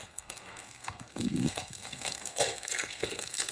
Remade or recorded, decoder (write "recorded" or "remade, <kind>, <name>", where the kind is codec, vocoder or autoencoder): remade, codec, SNAC